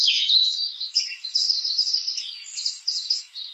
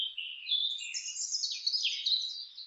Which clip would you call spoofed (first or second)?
first